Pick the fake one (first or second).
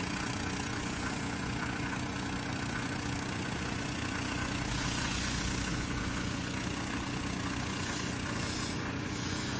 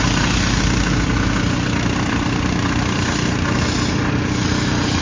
first